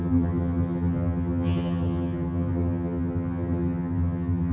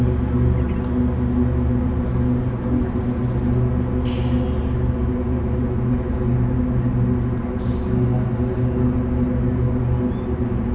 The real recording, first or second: second